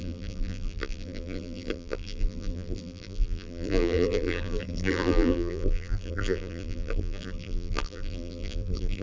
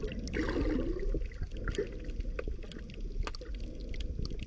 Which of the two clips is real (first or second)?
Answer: second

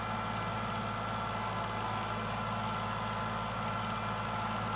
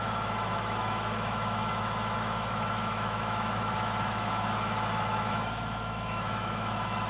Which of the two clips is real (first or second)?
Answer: first